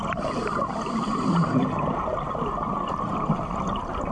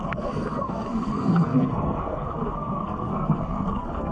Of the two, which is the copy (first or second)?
second